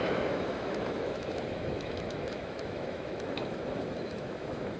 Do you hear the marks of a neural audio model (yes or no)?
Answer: yes